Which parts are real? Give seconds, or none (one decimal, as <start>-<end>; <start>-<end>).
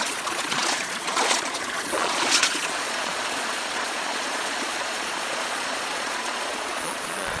none